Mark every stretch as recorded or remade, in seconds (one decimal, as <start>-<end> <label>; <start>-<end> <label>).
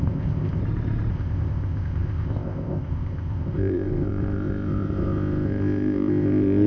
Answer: 0.0-0.6 remade; 0.6-1.1 recorded; 1.1-6.7 remade